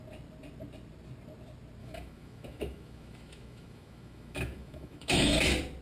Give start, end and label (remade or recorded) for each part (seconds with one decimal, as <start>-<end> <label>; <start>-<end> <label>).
0.0-1.8 recorded; 1.8-5.3 remade; 5.3-5.8 recorded